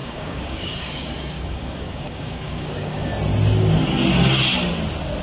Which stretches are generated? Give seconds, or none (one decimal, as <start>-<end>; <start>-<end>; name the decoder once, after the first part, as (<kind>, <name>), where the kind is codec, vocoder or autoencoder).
0.0-3.1 (codec, DAC)